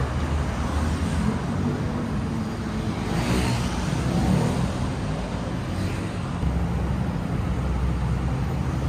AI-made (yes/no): no